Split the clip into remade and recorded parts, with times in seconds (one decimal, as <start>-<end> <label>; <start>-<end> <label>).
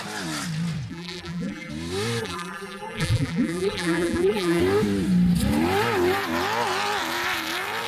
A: 0.0-0.9 recorded; 0.9-1.7 remade; 1.7-2.2 recorded; 2.2-4.6 remade; 4.6-7.9 recorded